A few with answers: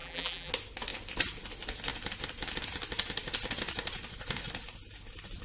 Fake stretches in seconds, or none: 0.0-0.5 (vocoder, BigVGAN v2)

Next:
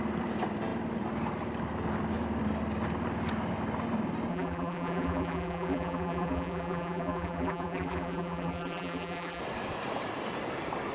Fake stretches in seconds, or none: 4.3-9.4 (vocoder, BigVGAN v2)